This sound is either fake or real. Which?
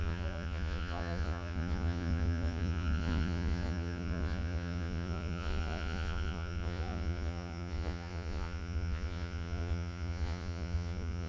fake